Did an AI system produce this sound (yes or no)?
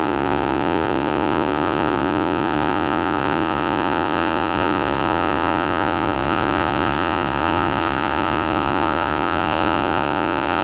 yes